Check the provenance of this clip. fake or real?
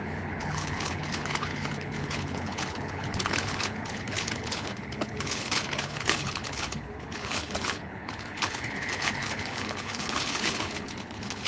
fake